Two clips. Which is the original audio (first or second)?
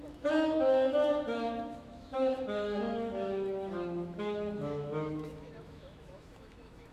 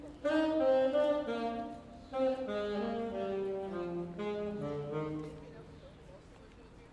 second